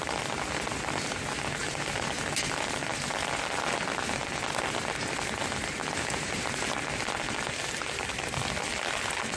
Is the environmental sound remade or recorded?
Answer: recorded